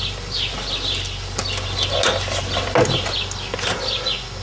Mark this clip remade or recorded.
recorded